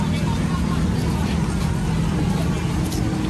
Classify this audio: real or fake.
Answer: real